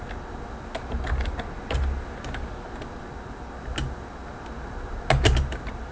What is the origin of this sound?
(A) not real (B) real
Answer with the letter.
B